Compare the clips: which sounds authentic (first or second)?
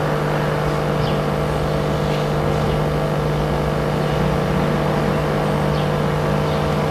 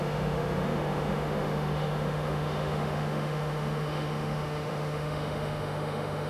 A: first